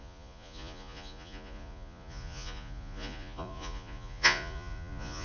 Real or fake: fake